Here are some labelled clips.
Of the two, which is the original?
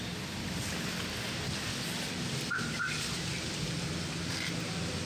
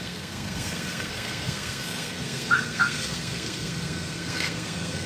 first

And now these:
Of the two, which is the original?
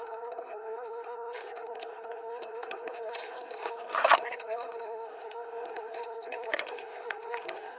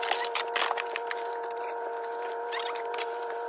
second